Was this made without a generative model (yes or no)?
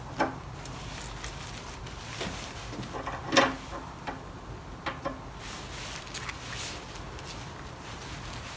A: yes